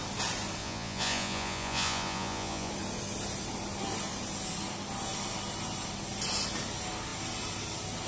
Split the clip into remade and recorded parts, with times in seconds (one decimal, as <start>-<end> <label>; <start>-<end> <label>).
0.0-0.6 recorded; 0.6-2.7 remade; 2.7-8.1 recorded